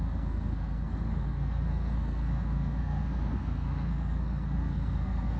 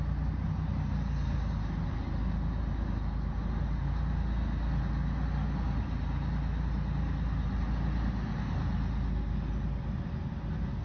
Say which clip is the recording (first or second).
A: second